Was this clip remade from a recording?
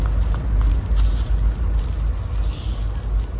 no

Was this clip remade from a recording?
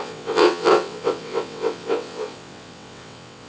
yes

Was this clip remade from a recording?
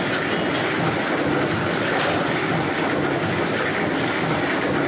no